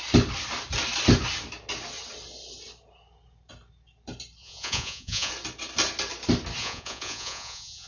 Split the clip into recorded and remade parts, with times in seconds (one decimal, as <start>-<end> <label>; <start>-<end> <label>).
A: 0.0-4.4 recorded; 4.4-5.3 remade; 5.3-6.6 recorded; 6.6-7.9 remade